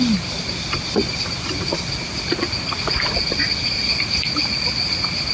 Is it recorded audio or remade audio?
recorded